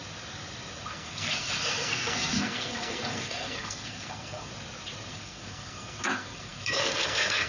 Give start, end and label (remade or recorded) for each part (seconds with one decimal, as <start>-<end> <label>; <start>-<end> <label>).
0.0-0.9 recorded; 0.9-4.5 remade; 4.5-5.1 recorded; 5.1-7.5 remade